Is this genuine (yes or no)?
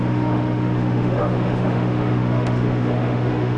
no